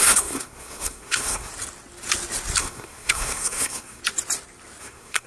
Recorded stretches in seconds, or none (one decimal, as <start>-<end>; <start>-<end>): 1.5-2.6; 4.0-4.8